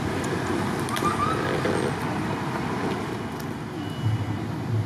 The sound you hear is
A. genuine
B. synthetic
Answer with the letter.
A